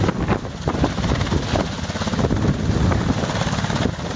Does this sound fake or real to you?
real